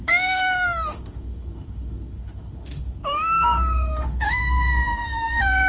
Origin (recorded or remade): remade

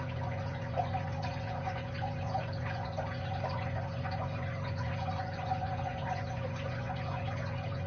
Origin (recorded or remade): remade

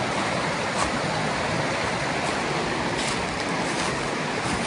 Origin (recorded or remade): recorded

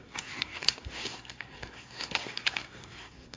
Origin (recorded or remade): remade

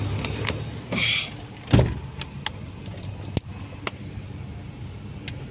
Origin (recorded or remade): recorded